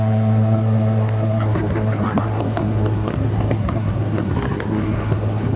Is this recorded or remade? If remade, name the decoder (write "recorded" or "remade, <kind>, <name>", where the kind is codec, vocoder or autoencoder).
remade, codec, SNAC